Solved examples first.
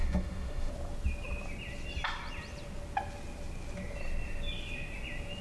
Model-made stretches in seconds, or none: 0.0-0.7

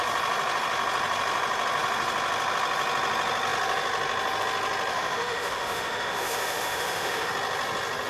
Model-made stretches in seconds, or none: 4.9-7.3

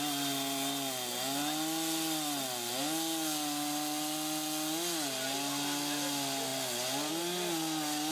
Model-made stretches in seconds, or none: none

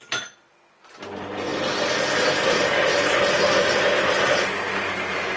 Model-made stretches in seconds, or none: none

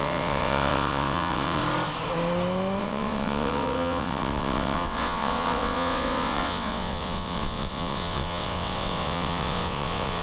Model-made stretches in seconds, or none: 0.0-1.6; 2.8-10.2

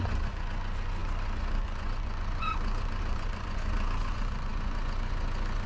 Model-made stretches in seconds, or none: 0.0-5.7